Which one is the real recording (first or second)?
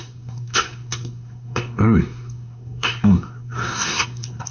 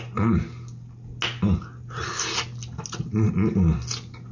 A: second